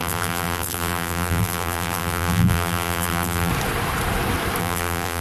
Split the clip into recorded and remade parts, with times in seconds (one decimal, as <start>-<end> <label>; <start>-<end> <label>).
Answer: 0.0-3.5 remade; 3.5-4.6 recorded; 4.6-5.2 remade